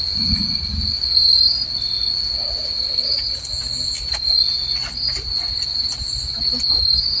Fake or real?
real